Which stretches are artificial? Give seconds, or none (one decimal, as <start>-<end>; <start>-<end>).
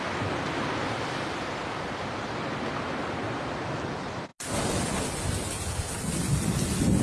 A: none